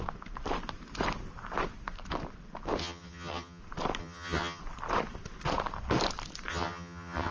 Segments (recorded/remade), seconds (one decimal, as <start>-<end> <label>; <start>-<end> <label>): 0.0-2.8 recorded; 2.8-3.6 remade; 3.6-4.0 recorded; 4.0-4.6 remade; 4.6-6.5 recorded; 6.5-7.3 remade

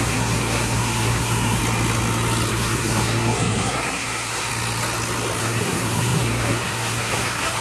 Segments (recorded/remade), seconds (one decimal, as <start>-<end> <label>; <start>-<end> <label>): 0.0-1.6 remade; 1.6-2.5 recorded; 2.5-4.5 remade; 4.5-5.4 recorded; 5.4-7.6 remade

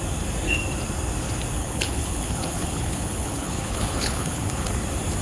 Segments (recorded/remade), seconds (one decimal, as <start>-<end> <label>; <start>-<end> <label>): 0.0-1.6 recorded; 1.6-4.7 remade; 4.7-5.2 recorded

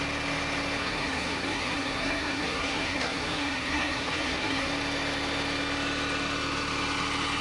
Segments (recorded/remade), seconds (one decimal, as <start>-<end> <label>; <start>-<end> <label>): 0.0-0.8 recorded; 0.8-4.7 remade; 4.7-7.4 recorded